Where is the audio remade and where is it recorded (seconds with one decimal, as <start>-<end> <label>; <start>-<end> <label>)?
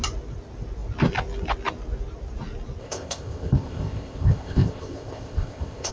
0.0-2.8 recorded; 2.8-5.9 remade